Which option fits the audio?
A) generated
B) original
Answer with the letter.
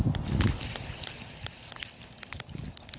B